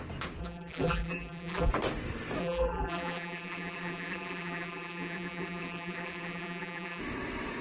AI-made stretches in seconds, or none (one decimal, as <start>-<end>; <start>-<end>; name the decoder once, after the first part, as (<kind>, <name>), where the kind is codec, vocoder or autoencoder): 0.4-1.7 (vocoder, BigVGAN v2); 2.4-7.0